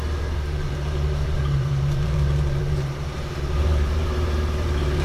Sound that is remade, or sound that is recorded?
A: remade